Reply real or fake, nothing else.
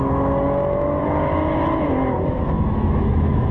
fake